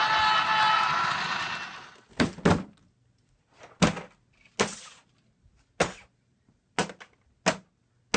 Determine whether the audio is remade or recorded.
recorded